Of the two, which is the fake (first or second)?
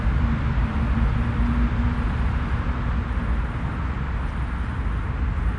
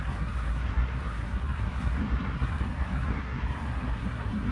second